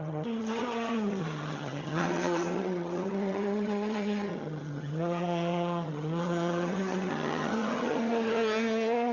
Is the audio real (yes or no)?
no